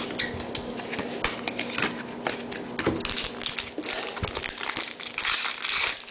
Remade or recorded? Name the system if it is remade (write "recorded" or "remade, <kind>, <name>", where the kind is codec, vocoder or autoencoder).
recorded